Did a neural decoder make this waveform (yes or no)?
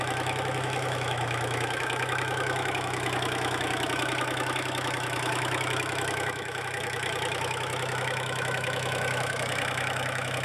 yes